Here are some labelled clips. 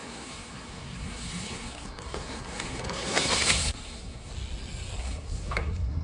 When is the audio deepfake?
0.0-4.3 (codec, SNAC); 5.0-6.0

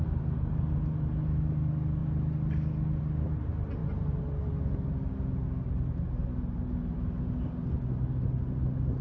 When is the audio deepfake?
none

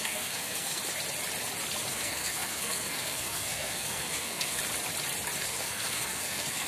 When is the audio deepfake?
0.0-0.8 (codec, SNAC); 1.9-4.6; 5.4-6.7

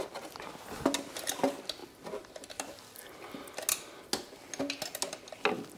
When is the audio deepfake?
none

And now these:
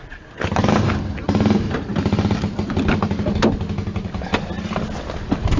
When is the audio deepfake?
none

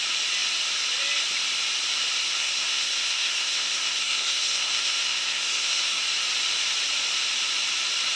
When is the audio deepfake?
2.4-6.0 (codec, SNAC)

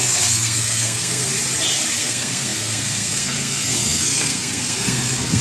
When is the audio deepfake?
0.0-1.3 (codec, SNAC); 2.0-5.4